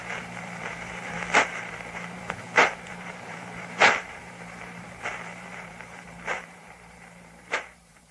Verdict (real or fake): fake